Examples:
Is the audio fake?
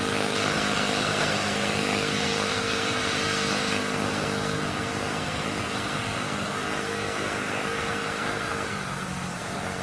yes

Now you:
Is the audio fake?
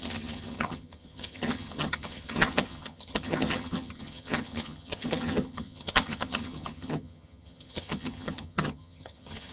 yes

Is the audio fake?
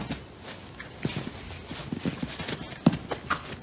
no